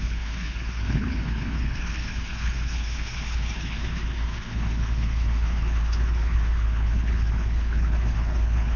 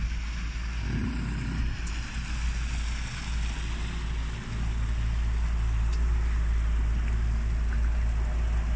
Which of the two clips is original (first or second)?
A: second